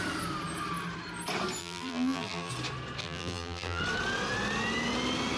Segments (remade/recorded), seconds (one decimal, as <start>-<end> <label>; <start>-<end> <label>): 0.0-1.6 recorded; 1.6-2.5 remade; 2.5-3.0 recorded; 3.0-3.8 remade; 3.8-5.4 recorded